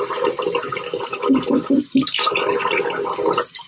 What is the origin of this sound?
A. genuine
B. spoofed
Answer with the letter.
A